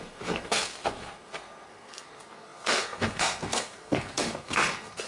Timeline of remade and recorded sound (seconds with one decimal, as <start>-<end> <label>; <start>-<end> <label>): 0.0-5.1 remade